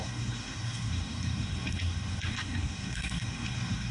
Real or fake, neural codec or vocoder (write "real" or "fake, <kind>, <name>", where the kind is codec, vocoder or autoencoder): fake, codec, SNAC